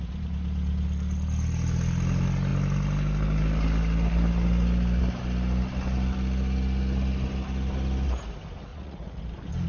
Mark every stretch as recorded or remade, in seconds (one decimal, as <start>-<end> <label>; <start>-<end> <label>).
0.0-8.7 recorded; 8.7-9.2 remade; 9.2-9.7 recorded